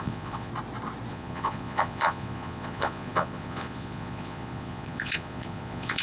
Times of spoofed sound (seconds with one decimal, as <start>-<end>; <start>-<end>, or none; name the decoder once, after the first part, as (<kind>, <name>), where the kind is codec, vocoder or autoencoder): 0.0-0.5 (vocoder, Vocos); 1.1-6.0